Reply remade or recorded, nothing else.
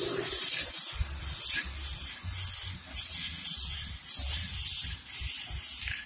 recorded